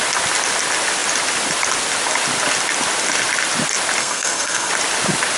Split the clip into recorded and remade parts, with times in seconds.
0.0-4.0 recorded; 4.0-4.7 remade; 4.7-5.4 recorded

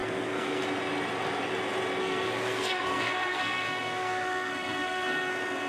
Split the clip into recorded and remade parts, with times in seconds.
0.0-0.6 remade; 0.6-2.0 recorded; 2.0-5.3 remade; 5.3-5.7 recorded

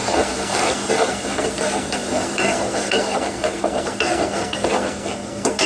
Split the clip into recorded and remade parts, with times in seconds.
0.0-5.7 remade

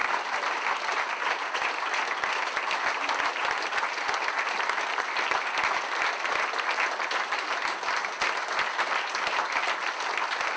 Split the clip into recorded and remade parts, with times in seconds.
0.0-10.6 recorded

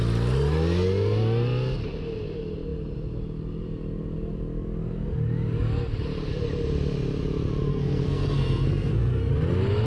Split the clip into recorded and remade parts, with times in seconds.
0.0-7.7 recorded; 7.7-9.3 remade; 9.3-9.9 recorded

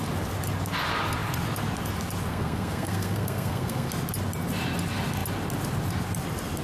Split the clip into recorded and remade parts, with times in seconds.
0.0-2.3 recorded; 2.3-3.9 remade; 3.9-6.6 recorded

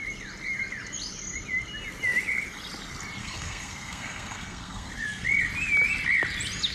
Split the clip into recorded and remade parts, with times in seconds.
0.0-3.2 recorded; 3.2-4.9 remade; 4.9-6.7 recorded